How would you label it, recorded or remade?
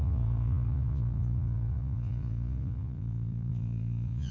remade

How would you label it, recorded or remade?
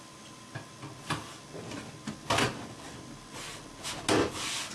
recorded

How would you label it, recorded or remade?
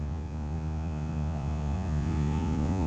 remade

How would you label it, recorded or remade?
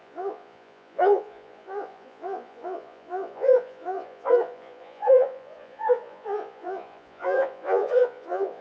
remade